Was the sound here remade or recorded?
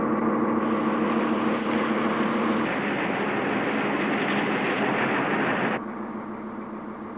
recorded